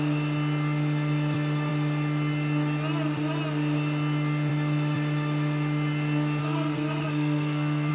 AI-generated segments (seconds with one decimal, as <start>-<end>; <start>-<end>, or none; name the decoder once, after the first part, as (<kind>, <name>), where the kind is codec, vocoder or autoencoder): 6.4-7.9 (codec, SNAC)